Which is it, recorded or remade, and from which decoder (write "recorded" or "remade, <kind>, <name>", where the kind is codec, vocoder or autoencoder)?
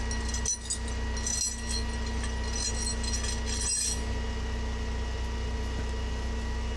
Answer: recorded